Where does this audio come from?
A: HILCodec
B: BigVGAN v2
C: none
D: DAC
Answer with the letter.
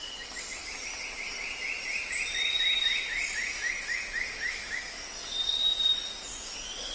C